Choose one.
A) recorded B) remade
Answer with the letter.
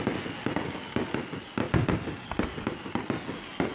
A